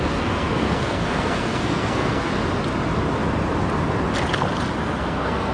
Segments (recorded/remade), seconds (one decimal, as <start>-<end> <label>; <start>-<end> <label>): 0.0-2.3 remade; 2.3-4.8 recorded; 4.8-5.5 remade